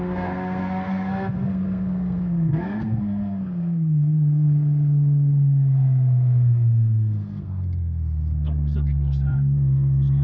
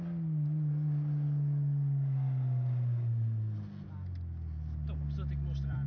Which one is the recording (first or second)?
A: second